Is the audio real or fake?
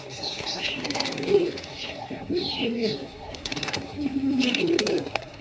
fake